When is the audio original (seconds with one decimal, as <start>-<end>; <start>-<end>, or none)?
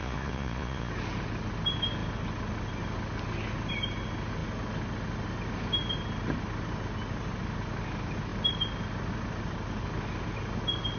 0.9-11.0